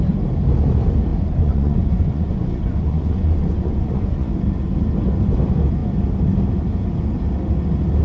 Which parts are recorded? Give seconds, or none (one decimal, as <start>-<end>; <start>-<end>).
0.0-1.1; 4.3-8.0